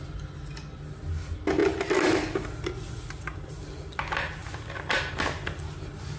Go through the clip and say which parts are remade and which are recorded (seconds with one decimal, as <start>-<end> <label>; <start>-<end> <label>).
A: 0.0-6.2 recorded